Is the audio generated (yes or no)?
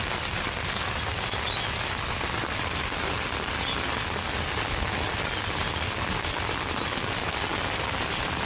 no